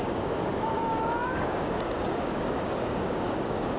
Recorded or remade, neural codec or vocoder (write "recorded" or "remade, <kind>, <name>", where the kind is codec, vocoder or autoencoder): remade, codec, DAC